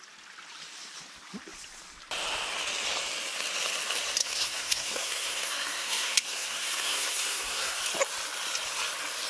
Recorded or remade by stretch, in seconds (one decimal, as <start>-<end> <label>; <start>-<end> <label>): 0.0-4.2 recorded; 4.2-7.8 remade; 7.8-9.3 recorded